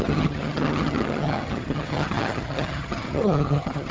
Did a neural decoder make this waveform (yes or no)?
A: yes